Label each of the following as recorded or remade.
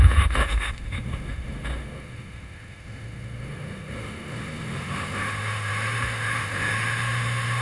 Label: remade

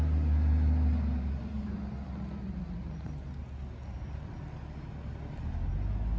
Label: recorded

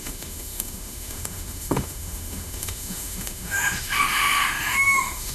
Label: remade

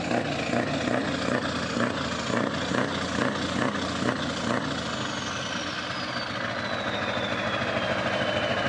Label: recorded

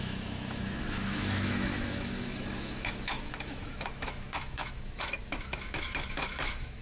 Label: remade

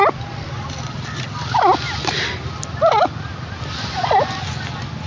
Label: recorded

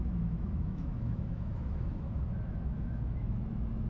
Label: remade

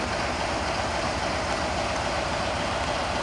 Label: recorded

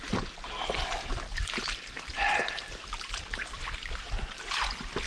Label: recorded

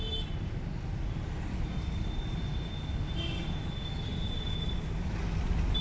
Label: recorded